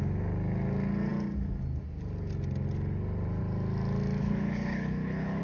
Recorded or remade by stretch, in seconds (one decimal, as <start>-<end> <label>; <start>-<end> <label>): 0.0-4.2 recorded; 4.2-5.4 remade